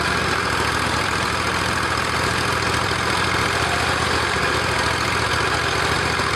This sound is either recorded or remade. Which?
remade